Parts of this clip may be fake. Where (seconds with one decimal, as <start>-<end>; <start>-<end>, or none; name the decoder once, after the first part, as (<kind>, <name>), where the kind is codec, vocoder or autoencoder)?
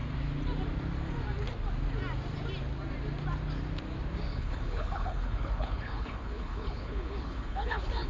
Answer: 4.3-8.1 (codec, HILCodec)